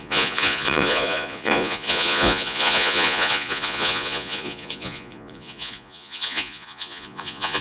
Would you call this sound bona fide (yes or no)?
no